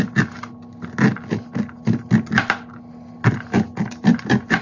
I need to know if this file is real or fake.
real